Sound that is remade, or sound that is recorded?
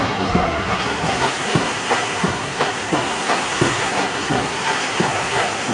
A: remade